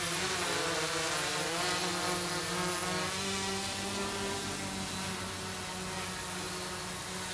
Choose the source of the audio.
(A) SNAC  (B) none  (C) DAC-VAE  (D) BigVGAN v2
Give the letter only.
B